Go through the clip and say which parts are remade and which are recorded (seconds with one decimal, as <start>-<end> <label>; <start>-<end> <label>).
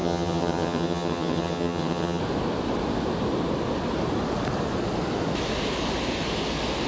0.0-2.2 remade; 2.2-6.9 recorded